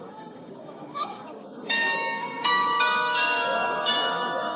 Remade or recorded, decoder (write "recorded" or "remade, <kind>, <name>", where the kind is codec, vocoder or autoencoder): remade, codec, DAC